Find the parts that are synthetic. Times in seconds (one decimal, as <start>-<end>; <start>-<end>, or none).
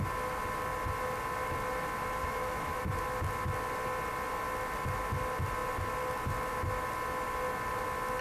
2.2-2.8